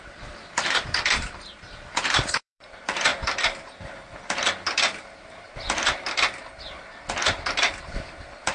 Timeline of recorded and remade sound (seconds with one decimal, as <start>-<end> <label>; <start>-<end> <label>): 0.0-3.1 remade; 3.1-7.8 recorded; 7.8-8.5 remade